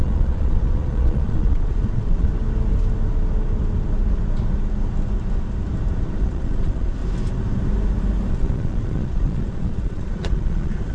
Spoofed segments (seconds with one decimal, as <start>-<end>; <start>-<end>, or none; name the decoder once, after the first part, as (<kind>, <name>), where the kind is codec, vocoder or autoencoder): 0.0-2.3 (vocoder, Vocos); 6.2-7.0; 8.3-10.9